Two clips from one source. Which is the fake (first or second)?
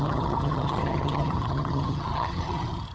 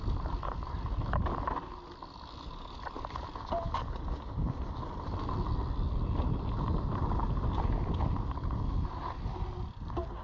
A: first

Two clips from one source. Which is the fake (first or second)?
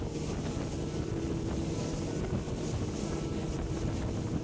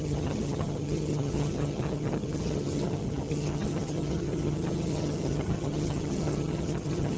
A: second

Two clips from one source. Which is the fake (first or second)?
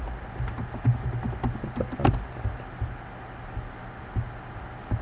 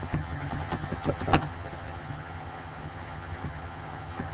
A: second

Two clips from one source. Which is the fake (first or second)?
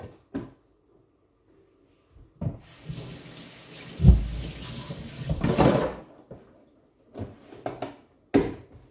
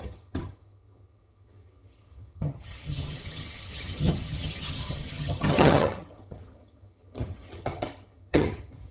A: second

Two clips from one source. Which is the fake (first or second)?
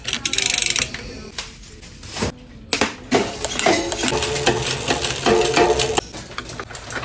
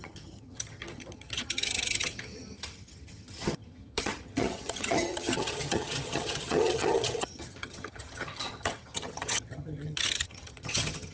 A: second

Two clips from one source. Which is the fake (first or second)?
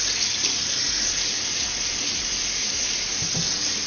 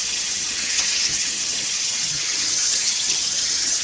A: second